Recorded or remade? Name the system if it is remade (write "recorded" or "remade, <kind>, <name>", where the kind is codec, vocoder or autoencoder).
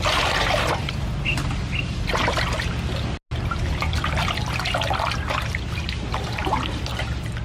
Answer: recorded